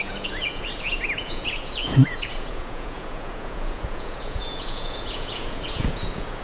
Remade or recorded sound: remade